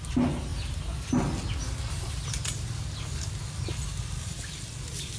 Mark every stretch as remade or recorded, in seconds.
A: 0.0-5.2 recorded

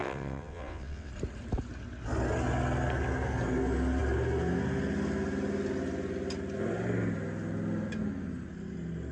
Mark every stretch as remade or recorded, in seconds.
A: 0.0-1.1 remade; 1.1-9.1 recorded

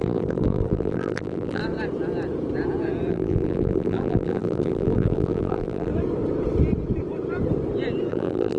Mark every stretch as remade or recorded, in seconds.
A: 0.0-1.6 remade; 1.6-3.1 recorded; 3.1-5.9 remade; 5.9-8.1 recorded; 8.1-8.6 remade

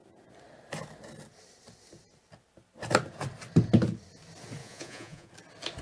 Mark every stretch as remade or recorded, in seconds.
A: 0.0-4.6 recorded; 4.6-5.3 remade; 5.3-5.8 recorded